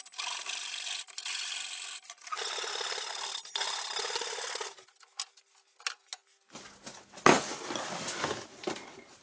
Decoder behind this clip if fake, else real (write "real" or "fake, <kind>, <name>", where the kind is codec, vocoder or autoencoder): real